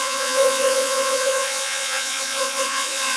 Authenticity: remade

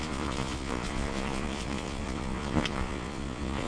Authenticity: remade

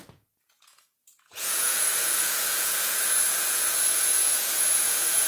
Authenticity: remade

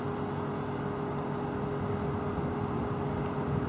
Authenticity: recorded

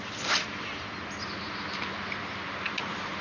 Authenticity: recorded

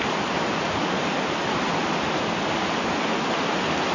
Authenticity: recorded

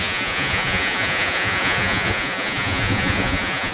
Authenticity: remade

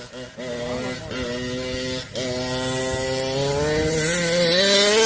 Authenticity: recorded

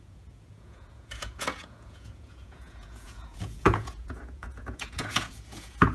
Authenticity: remade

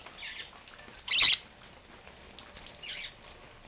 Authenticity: recorded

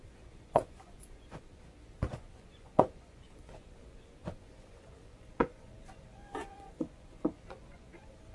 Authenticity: remade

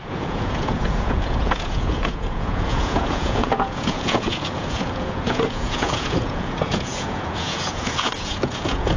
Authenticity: remade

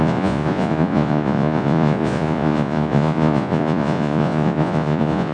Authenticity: remade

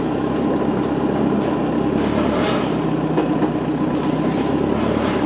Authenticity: recorded